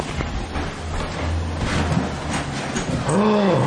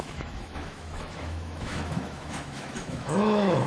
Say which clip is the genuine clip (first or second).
first